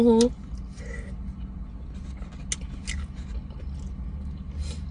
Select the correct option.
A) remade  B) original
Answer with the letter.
B